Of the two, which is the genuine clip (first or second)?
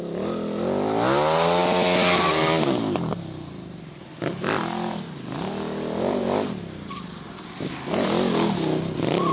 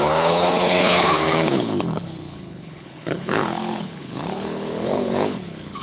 first